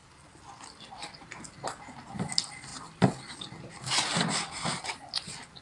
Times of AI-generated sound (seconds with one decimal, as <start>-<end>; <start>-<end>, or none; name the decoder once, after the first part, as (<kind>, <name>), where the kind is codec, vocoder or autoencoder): none